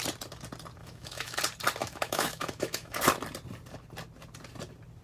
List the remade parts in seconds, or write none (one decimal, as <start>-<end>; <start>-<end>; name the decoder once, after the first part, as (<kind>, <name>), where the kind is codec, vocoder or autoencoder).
0.8-1.4 (autoencoder, DAC-VAE); 1.8-3.0